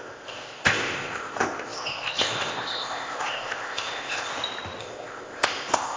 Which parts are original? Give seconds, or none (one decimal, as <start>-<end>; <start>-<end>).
4.3-4.8